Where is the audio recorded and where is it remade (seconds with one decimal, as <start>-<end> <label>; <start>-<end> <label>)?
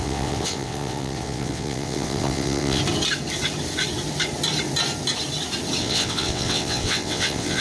0.0-2.8 remade; 2.8-5.8 recorded; 5.8-7.6 remade